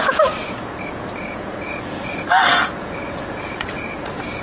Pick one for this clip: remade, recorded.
remade